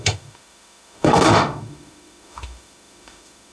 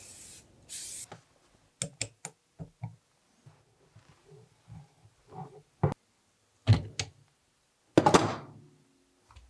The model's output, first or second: first